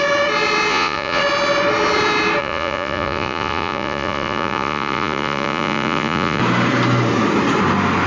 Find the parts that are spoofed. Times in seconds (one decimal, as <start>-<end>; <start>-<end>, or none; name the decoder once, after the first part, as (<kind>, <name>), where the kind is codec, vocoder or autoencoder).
0.7-1.2 (vocoder, Vocos); 2.4-6.4